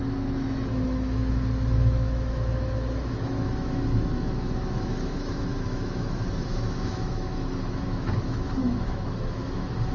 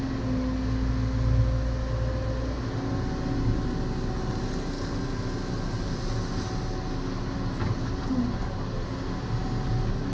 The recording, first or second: second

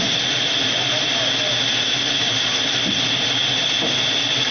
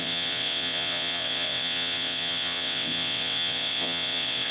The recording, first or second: first